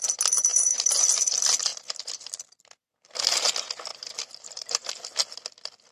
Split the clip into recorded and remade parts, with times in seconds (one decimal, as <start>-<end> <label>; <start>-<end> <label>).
0.0-0.5 recorded; 0.5-1.0 remade; 1.0-1.7 recorded; 1.7-2.6 remade; 2.6-3.9 recorded; 3.9-4.9 remade; 4.9-5.9 recorded